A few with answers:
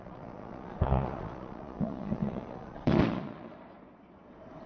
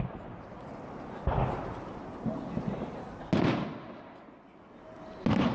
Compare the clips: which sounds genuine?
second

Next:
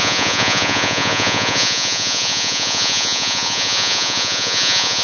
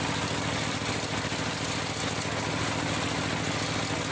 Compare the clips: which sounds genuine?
second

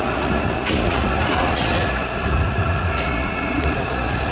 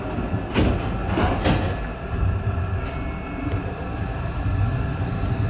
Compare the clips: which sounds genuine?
second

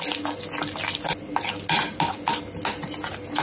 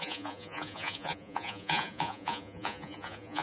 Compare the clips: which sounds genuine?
first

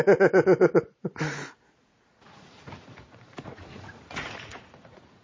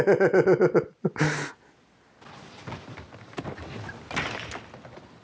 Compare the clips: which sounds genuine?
second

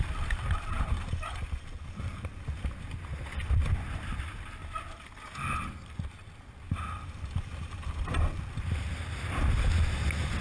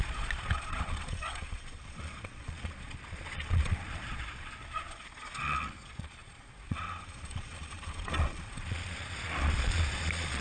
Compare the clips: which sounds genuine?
first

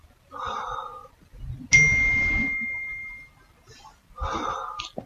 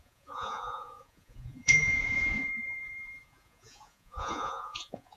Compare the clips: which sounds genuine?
first